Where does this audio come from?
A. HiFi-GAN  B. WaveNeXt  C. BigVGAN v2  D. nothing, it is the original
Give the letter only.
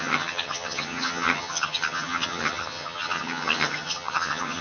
A